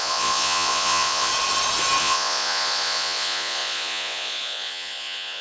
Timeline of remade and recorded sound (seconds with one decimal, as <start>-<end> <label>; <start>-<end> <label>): 0.0-1.3 remade; 1.3-2.0 recorded; 2.0-5.4 remade